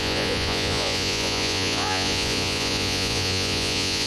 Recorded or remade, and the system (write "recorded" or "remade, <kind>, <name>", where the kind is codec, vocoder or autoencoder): remade, vocoder, Vocos